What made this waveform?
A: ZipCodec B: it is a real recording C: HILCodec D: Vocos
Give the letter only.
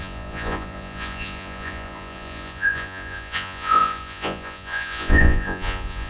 D